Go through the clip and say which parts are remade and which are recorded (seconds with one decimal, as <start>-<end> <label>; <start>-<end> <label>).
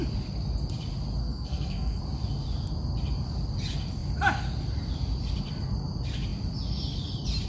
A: 0.0-1.2 recorded; 1.2-2.0 remade; 2.0-7.5 recorded